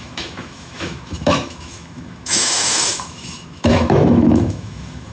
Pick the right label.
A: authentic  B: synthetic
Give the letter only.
B